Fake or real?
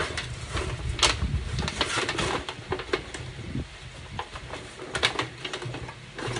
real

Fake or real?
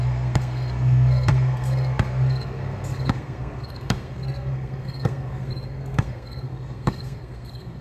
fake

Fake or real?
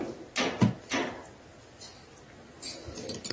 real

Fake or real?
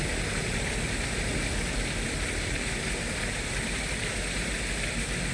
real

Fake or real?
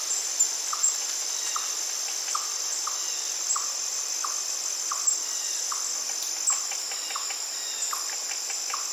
real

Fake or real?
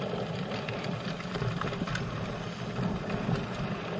real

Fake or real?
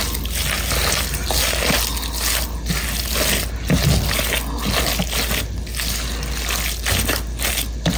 real